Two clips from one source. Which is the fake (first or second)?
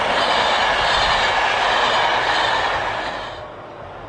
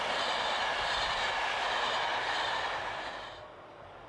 second